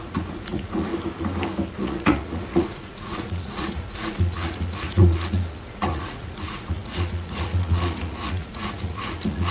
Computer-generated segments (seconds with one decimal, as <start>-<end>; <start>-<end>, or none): 0.0-0.9; 1.8-9.5